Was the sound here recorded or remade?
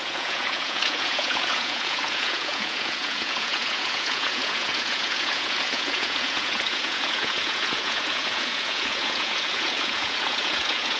remade